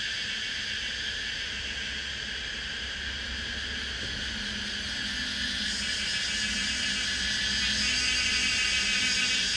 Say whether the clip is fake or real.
real